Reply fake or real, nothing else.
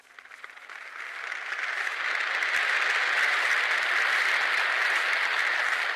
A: real